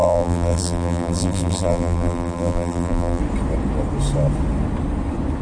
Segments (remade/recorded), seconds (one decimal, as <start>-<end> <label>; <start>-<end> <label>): 0.0-3.2 remade; 3.2-5.4 recorded